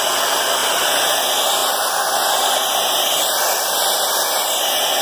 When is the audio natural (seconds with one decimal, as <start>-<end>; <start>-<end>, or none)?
0.0-0.6; 1.2-5.0